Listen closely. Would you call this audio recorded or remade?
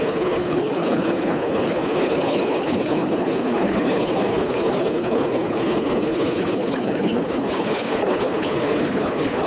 remade